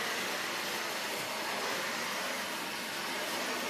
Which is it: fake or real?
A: fake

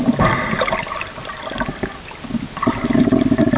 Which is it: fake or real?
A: real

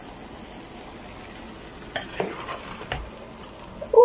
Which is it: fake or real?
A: real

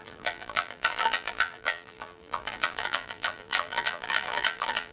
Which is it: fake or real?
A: fake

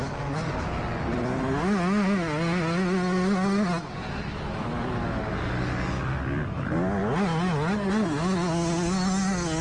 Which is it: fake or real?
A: real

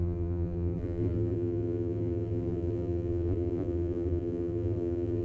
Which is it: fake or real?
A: fake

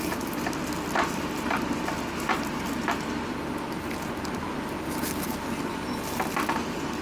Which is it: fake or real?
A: real